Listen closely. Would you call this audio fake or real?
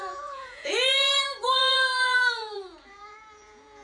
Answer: fake